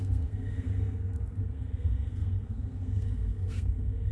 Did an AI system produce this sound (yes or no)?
yes